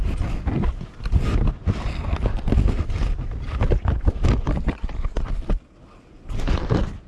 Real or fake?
real